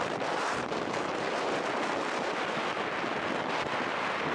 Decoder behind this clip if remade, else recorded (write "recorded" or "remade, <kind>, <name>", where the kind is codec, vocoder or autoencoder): recorded